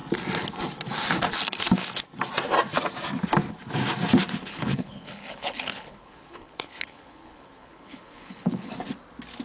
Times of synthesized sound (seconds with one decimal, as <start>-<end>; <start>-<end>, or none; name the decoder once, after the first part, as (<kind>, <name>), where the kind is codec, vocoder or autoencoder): 4.4-8.7 (codec, HILCodec)